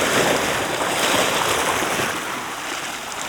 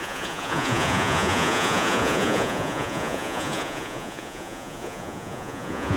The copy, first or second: second